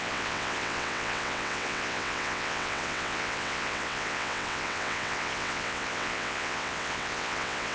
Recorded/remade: remade